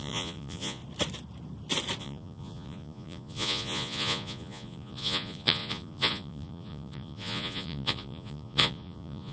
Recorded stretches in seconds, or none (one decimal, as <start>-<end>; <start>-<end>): 0.8-2.0